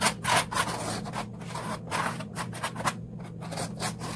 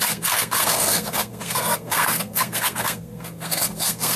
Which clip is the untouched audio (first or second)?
first